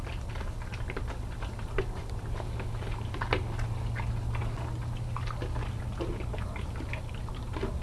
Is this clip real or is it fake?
real